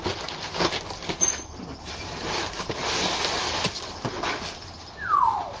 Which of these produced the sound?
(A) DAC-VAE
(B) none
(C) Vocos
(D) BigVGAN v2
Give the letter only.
B